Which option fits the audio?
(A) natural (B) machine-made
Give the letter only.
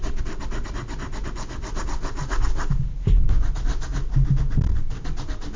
A